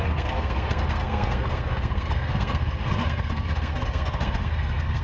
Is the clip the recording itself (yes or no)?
no